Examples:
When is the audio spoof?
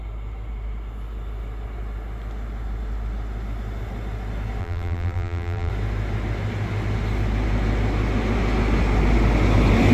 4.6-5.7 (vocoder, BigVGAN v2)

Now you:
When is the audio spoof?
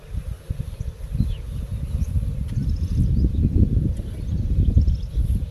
none